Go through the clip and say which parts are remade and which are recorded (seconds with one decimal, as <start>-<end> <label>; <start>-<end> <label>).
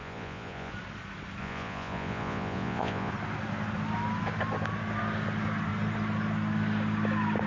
0.0-0.7 remade; 0.7-1.4 recorded; 1.4-3.1 remade; 3.1-7.5 recorded